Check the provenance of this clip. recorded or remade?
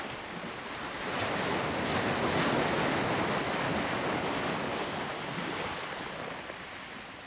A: recorded